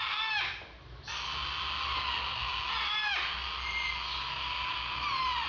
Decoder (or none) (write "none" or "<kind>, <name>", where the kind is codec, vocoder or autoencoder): none